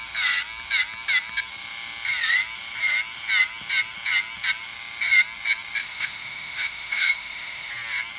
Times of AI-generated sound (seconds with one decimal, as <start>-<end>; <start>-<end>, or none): 5.8-7.7